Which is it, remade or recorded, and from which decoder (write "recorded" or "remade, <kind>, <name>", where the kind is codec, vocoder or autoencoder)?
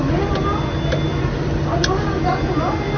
recorded